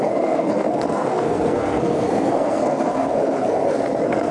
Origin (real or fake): fake